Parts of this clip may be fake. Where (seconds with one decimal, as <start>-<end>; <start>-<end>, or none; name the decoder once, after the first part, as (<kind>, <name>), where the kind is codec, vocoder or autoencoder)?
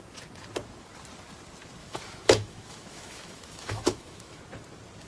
1.8-4.4 (autoencoder, DAC-VAE)